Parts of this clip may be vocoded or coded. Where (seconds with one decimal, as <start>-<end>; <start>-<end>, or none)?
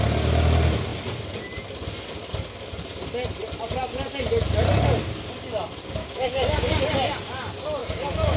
6.0-6.8; 7.8-8.4